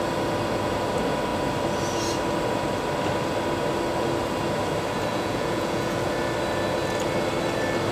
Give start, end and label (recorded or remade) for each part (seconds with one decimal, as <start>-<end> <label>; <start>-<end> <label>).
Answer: 0.0-5.1 recorded; 5.1-6.1 remade; 6.1-7.9 recorded

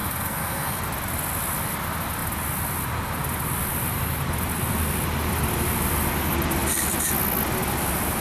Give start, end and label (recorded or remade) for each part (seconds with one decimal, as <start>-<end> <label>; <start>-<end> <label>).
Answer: 0.0-0.8 remade; 0.8-8.2 recorded

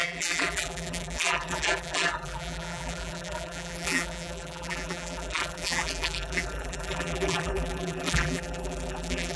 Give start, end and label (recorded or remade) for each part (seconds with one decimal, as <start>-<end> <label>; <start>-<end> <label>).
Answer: 0.0-9.4 remade